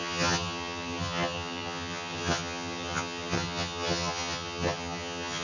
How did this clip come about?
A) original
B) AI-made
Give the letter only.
B